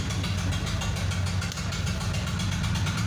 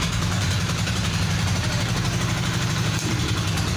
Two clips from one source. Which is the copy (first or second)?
second